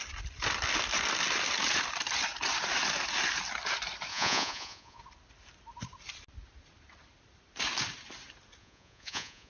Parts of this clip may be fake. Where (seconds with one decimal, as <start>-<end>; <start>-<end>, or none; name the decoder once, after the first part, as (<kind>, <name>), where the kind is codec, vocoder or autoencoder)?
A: 4.1-5.0 (vocoder, Vocos); 8.6-9.5